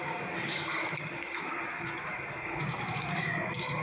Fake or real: fake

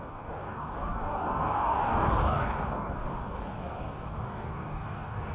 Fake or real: fake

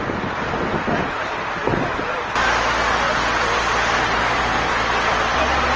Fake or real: real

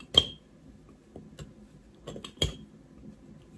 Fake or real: real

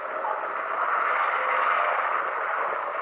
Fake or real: real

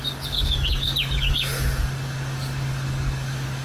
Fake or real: fake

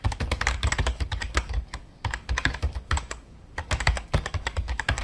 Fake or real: fake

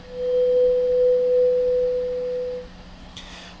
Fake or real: real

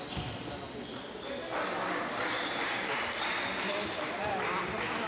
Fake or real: real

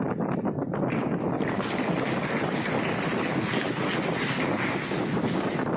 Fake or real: real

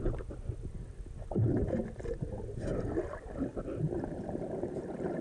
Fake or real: real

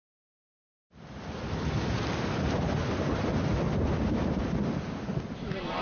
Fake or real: real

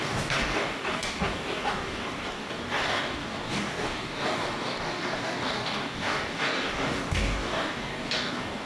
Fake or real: fake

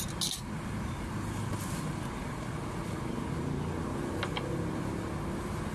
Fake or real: real